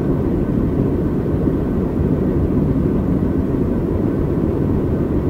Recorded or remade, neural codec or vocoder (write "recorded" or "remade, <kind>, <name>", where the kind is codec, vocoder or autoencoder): recorded